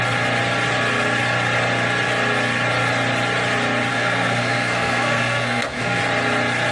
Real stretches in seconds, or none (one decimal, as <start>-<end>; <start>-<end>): 0.0-3.9; 6.0-6.7